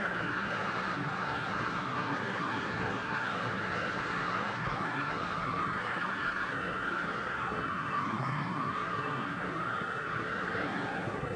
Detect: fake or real fake